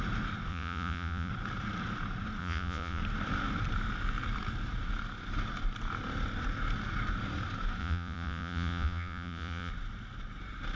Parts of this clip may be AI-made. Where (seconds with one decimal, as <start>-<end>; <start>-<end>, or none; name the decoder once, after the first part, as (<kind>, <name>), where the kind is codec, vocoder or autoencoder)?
0.5-1.3 (vocoder, Vocos); 2.4-3.0; 7.8-9.7